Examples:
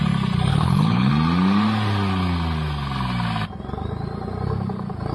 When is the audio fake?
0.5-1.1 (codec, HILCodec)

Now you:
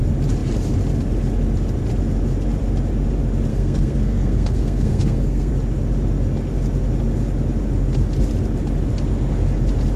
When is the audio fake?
3.5-5.5 (codec, SNAC)

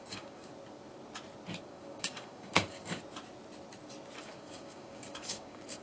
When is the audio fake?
0.0-0.5 (codec, DAC); 1.6-3.0; 4.2-5.8

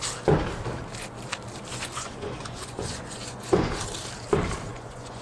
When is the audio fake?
1.7-3.8 (vocoder, Vocos); 4.7-5.2